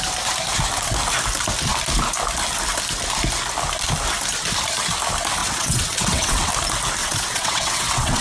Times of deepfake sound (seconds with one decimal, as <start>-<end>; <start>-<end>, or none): 5.4-6.5; 7.0-8.2

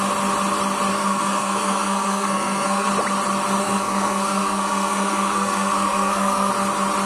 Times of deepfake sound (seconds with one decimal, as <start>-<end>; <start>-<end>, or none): 0.9-2.9; 3.6-6.5

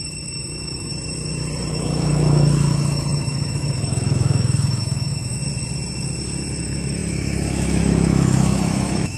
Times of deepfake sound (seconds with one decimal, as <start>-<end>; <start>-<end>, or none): 0.0-0.9; 1.7-5.4; 6.6-9.2

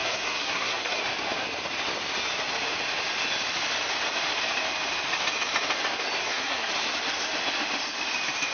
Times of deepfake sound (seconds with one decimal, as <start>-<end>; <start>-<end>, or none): 0.0-1.0; 6.2-6.7

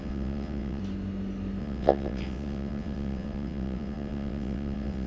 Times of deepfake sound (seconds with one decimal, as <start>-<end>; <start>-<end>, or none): 0.0-0.8; 1.6-5.1

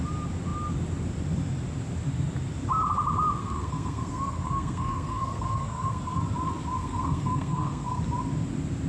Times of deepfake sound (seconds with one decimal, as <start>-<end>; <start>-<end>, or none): 3.4-6.2; 6.8-8.0